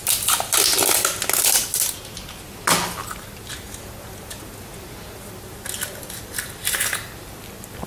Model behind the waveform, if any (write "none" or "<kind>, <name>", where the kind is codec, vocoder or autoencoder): none